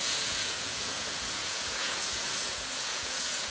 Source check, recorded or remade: remade